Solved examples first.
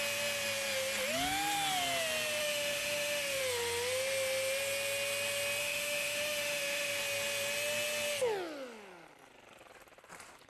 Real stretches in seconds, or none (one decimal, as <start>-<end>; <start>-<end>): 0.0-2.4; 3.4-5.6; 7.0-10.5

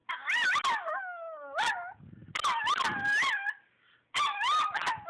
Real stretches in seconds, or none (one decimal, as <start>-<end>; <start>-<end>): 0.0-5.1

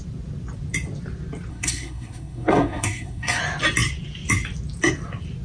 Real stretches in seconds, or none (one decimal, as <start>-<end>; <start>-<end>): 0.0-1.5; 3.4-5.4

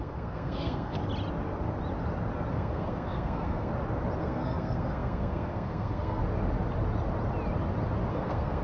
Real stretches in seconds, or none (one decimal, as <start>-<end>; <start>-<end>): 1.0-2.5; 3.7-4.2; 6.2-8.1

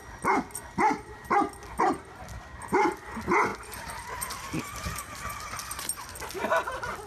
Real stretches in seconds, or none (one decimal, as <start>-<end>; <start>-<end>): 0.0-4.7; 5.5-7.1

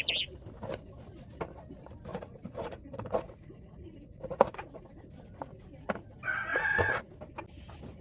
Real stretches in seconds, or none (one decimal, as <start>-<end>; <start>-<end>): 0.0-2.1; 4.9-6.5; 7.0-8.0